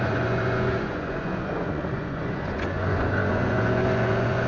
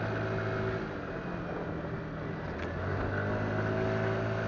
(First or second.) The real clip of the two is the second